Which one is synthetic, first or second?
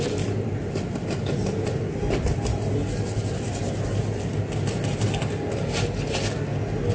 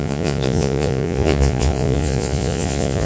second